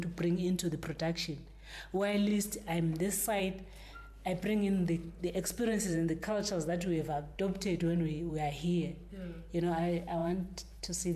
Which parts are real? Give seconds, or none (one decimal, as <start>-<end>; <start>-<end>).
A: 0.0-5.0; 8.3-10.2